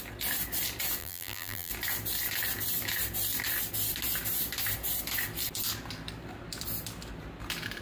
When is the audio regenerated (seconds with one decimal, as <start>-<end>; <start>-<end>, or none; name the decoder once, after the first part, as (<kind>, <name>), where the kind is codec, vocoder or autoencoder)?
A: 1.0-1.7 (vocoder, BigVGAN v2)